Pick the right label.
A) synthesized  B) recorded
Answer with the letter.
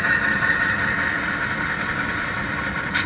B